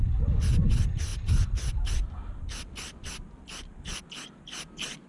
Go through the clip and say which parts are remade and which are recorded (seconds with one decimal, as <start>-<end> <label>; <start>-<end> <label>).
0.0-5.1 recorded